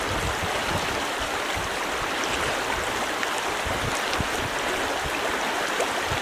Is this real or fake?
real